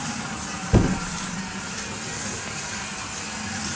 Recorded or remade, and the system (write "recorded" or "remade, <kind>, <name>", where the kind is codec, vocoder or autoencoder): recorded